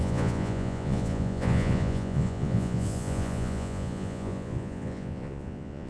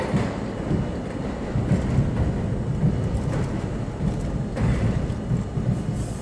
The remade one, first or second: first